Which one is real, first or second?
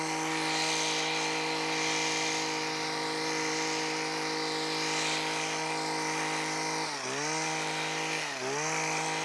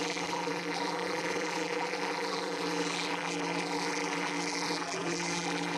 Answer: first